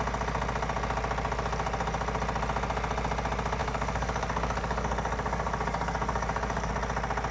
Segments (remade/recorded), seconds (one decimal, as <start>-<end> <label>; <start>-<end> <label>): 0.0-3.6 recorded; 3.6-6.7 remade; 6.7-7.3 recorded